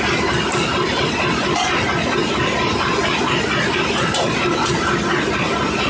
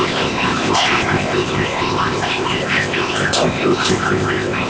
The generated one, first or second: second